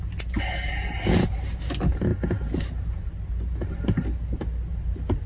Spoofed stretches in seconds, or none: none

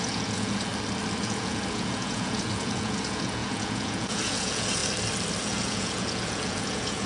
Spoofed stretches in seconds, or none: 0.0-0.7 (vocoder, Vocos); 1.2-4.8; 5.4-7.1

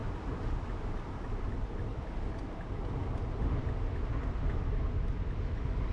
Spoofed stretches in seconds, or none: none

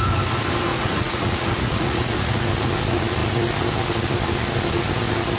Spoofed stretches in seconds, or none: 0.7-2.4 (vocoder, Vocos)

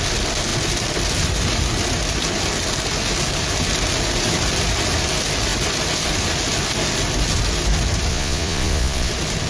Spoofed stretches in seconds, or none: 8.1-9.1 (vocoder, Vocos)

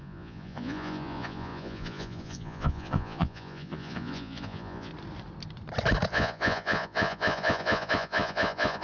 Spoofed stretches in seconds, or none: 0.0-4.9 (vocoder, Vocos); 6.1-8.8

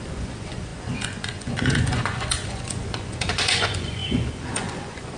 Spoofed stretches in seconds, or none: 0.0-5.2 (vocoder, Vocos)

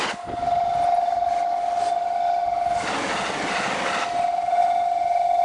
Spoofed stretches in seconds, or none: none